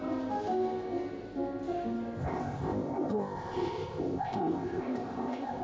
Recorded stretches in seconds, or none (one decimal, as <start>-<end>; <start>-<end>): 0.0-2.2